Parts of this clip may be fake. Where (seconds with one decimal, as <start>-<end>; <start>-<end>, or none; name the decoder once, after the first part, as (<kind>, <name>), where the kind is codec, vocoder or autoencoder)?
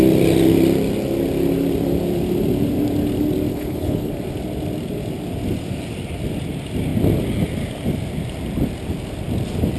3.5-4.1 (codec, HILCodec)